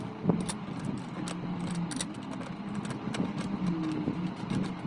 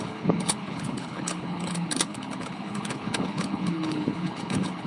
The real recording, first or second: first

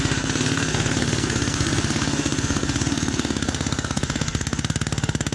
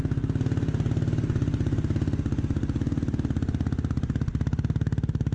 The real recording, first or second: second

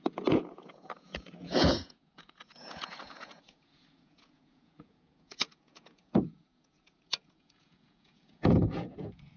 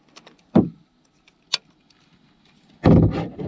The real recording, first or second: second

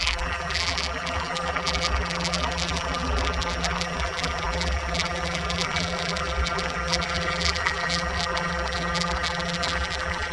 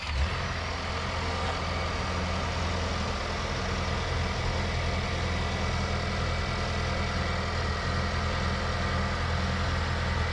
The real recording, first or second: second